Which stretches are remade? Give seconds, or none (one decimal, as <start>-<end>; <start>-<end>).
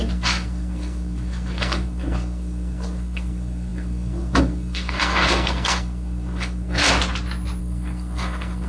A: 0.0-6.8; 7.6-8.7